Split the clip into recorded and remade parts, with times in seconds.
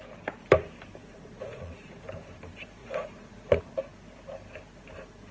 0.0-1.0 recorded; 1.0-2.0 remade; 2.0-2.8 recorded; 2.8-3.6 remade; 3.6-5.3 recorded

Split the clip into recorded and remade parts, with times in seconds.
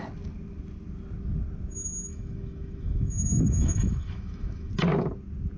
0.0-2.1 recorded; 2.1-4.7 remade; 4.7-5.6 recorded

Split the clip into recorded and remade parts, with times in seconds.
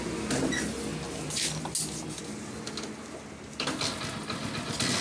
0.0-5.0 recorded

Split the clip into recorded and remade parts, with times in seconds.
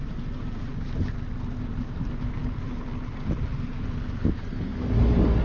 0.0-5.4 recorded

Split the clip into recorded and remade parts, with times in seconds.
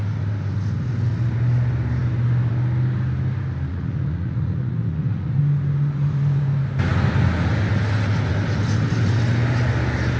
0.0-3.7 recorded; 3.7-5.4 remade; 5.4-10.2 recorded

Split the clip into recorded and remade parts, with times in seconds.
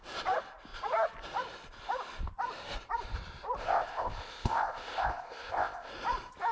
0.0-3.6 recorded; 3.6-5.9 remade; 5.9-6.5 recorded